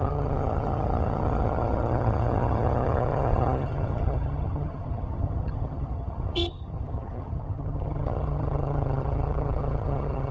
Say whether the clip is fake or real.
fake